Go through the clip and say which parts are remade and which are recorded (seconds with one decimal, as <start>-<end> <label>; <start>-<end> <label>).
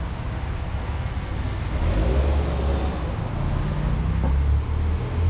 0.0-0.6 recorded; 0.6-1.6 remade; 1.6-5.3 recorded